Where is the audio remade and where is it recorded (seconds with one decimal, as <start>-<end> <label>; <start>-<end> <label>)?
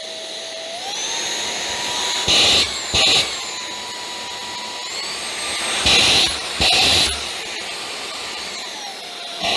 0.0-1.2 remade; 1.2-6.0 recorded; 6.0-9.6 remade